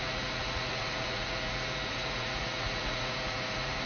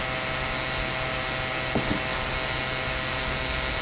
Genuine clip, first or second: second